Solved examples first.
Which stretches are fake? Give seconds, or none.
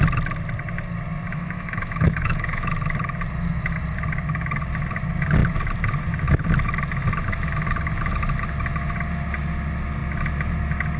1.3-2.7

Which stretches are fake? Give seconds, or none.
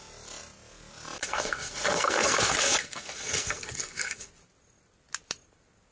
1.2-4.3